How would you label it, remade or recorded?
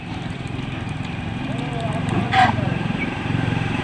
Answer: remade